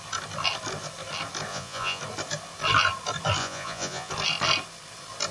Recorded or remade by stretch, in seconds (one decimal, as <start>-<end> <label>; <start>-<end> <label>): 0.0-1.5 recorded; 1.5-2.0 remade; 2.0-3.4 recorded; 3.4-4.1 remade; 4.1-5.3 recorded